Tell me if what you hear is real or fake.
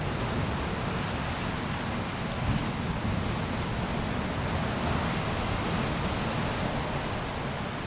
real